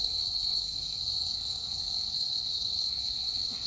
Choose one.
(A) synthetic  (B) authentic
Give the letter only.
A